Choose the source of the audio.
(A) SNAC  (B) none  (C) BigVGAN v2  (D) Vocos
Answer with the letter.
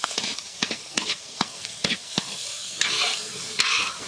A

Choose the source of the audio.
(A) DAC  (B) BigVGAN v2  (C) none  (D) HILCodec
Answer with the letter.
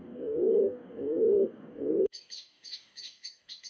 A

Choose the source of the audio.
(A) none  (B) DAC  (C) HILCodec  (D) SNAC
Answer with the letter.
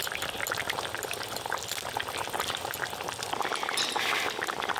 A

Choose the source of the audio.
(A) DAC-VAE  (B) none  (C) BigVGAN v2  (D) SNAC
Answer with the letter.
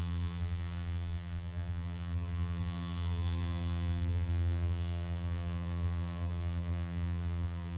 C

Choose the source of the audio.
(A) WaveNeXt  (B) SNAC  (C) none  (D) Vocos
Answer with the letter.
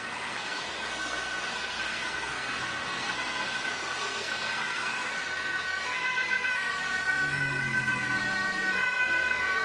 B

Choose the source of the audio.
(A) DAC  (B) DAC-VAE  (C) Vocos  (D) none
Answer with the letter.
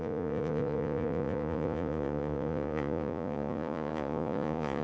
C